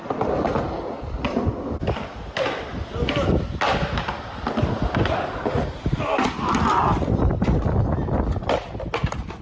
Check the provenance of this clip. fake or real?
real